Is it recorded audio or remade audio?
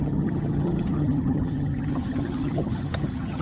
remade